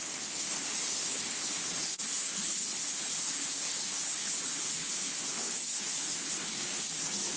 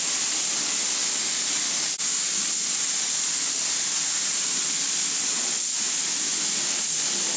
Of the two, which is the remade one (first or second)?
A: first